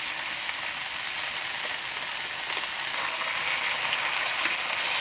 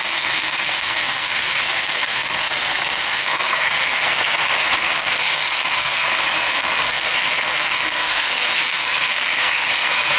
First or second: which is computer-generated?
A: second